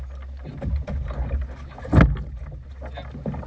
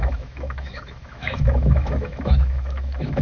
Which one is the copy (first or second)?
second